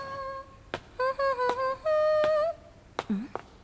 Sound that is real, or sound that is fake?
real